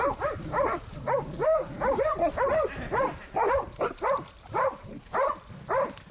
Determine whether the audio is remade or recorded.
remade